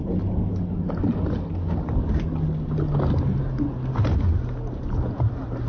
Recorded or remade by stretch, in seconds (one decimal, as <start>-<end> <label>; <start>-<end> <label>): 0.0-5.7 recorded